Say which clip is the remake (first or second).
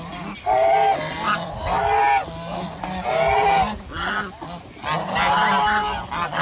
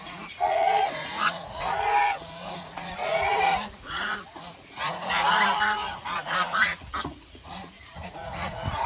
second